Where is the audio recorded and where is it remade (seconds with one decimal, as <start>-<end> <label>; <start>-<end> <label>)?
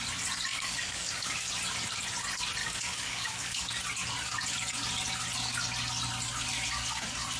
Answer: 0.0-0.5 recorded; 0.5-1.5 remade; 1.5-2.6 recorded; 2.6-3.8 remade; 3.8-7.4 recorded